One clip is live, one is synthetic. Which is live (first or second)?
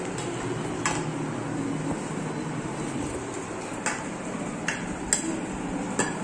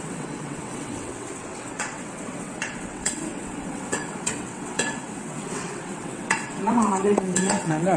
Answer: first